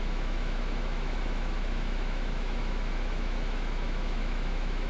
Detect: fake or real fake